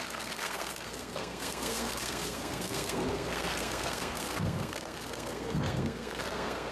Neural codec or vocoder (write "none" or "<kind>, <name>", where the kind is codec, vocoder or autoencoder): codec, SNAC